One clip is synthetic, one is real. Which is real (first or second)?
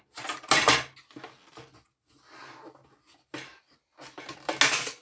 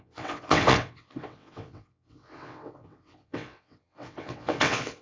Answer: first